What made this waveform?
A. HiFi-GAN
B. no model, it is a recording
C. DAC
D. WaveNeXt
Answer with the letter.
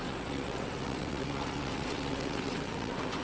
D